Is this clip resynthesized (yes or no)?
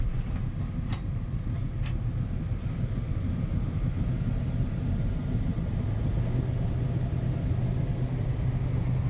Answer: no